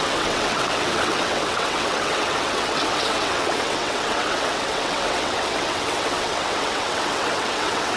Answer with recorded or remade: remade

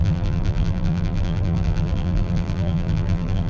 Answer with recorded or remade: remade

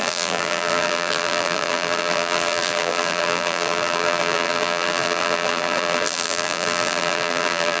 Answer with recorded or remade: remade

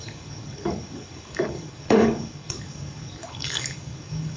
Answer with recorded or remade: remade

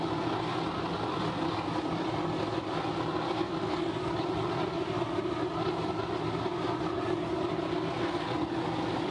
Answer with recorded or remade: recorded